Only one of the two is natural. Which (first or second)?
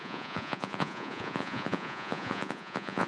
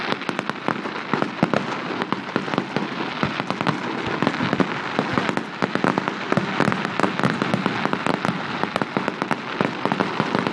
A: second